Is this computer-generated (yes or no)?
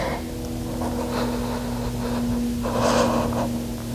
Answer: no